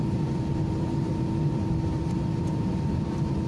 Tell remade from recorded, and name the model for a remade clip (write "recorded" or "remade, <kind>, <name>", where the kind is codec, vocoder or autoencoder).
remade, vocoder, BigVGAN v2